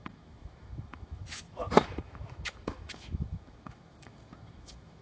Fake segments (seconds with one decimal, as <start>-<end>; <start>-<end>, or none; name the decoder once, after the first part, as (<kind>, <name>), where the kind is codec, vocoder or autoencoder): 0.0-5.0 (autoencoder, DAC-VAE)